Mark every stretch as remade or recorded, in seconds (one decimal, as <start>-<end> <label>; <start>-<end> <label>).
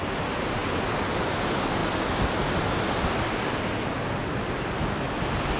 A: 0.0-5.6 recorded